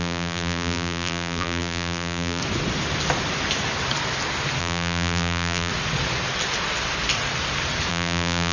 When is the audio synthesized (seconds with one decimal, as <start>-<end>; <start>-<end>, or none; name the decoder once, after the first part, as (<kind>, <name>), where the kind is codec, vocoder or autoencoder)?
0.0-2.4 (vocoder, BigVGAN v2); 4.6-5.7; 7.9-8.5